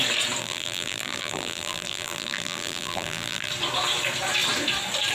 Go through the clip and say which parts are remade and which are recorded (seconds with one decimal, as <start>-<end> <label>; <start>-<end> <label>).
0.0-0.4 recorded; 0.4-3.5 remade; 3.5-5.1 recorded